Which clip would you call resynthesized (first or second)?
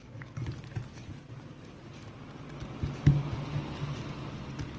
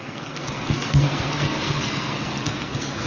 second